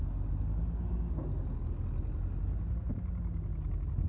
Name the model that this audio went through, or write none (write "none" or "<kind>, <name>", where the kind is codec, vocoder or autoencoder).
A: none